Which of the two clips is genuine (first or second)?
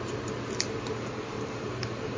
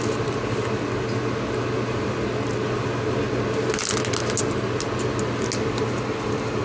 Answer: second